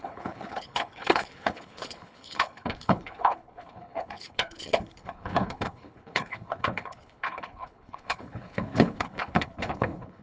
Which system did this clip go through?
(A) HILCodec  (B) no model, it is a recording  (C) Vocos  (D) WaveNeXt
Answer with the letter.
A